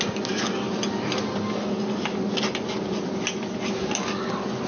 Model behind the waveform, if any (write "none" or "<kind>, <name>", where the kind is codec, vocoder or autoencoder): none